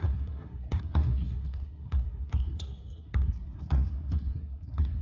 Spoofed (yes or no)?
yes